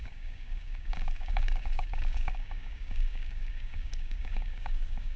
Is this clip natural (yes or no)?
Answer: no